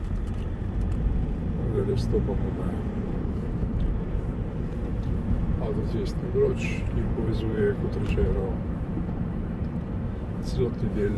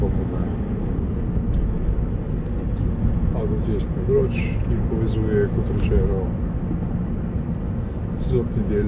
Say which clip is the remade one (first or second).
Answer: first